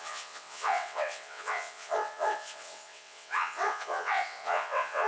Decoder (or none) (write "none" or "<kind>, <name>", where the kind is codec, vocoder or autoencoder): vocoder, WaveNeXt